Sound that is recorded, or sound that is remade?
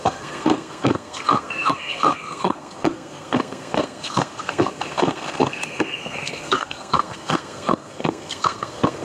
remade